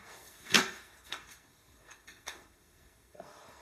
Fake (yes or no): yes